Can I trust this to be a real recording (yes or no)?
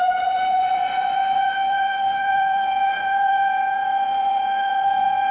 no